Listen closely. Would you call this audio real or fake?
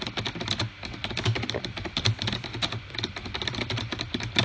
fake